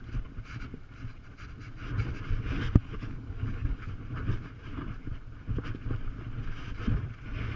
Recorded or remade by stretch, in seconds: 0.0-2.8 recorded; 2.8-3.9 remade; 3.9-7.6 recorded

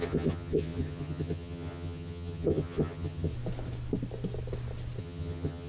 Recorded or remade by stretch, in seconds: 0.0-3.3 remade; 3.3-5.0 recorded; 5.0-5.7 remade

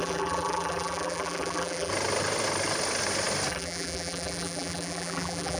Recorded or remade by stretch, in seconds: 0.0-1.9 remade; 1.9-3.5 recorded; 3.5-5.6 remade

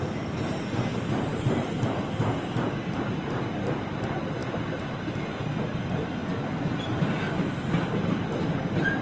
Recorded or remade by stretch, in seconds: 0.0-9.0 recorded

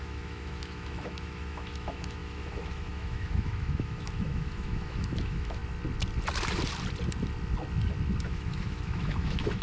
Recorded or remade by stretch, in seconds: 0.0-5.6 remade; 5.6-8.2 recorded; 8.2-9.6 remade

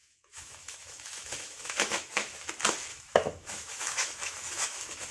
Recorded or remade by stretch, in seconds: 0.0-2.5 remade; 2.5-2.9 recorded; 2.9-5.1 remade

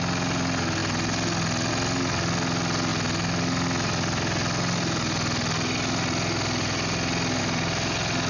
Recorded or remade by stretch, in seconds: 0.0-8.3 recorded

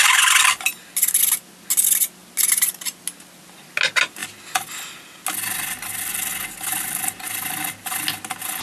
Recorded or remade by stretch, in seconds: 0.0-8.6 recorded